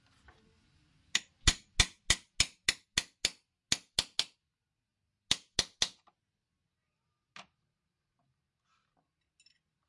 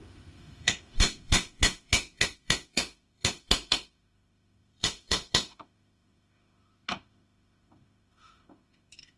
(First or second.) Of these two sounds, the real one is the first